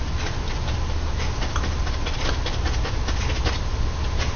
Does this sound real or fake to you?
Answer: real